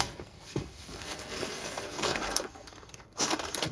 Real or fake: fake